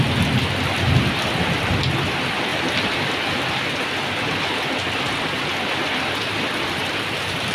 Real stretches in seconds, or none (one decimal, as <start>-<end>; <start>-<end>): 0.0-7.5